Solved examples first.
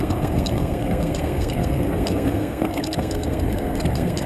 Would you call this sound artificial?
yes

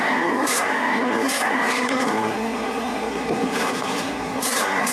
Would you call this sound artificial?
yes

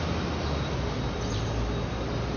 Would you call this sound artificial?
no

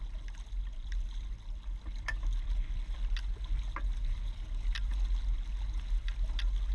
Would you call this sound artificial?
no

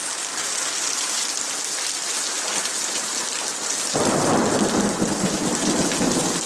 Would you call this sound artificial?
no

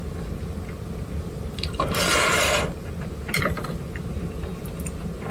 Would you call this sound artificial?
no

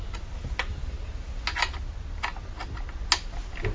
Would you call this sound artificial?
no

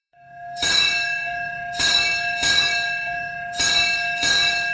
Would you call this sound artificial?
yes